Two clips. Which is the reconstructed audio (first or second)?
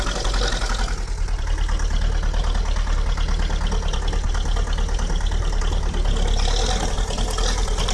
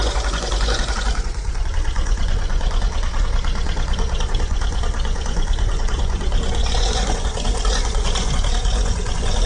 second